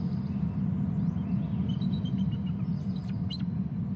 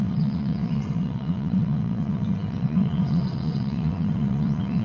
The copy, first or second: second